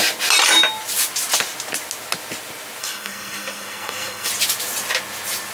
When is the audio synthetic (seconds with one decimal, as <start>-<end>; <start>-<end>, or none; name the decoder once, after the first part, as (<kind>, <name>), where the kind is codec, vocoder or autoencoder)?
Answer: 2.8-4.3 (codec, SNAC)